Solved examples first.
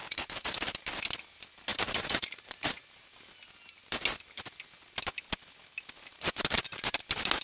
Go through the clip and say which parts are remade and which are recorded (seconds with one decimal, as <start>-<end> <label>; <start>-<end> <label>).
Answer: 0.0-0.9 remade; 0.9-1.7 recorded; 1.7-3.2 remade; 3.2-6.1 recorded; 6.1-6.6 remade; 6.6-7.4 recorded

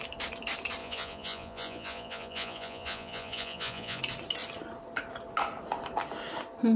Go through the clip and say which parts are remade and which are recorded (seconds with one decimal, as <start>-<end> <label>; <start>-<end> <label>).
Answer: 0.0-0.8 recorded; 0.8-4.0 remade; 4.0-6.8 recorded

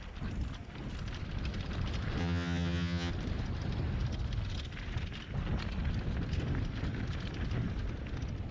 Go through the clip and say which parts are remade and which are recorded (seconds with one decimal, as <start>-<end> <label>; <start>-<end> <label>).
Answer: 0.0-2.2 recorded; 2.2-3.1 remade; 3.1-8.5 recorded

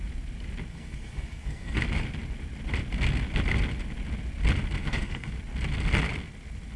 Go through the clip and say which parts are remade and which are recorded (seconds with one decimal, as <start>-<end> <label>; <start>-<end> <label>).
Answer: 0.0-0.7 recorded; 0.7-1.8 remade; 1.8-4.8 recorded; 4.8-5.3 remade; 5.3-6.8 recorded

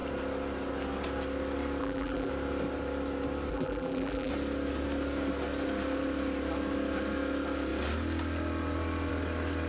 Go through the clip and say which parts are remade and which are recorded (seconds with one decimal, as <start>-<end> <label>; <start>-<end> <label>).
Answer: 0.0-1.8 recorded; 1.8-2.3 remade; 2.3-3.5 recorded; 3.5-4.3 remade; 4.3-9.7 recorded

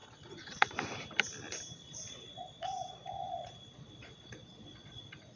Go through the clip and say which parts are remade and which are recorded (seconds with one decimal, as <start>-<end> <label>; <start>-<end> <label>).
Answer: 0.0-0.7 remade; 0.7-1.8 recorded; 1.8-5.0 remade; 5.0-5.4 recorded